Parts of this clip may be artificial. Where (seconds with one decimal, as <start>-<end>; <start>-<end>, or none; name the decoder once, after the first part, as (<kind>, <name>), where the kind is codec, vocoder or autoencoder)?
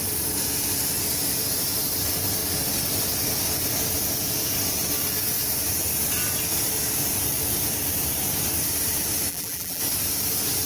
9.3-9.8 (vocoder, BigVGAN v2)